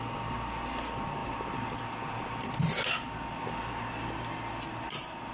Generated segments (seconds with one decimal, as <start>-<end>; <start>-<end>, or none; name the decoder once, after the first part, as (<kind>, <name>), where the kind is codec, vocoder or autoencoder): none